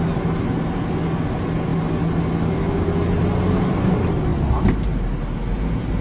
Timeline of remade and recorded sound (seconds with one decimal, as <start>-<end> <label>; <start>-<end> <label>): 0.0-6.0 recorded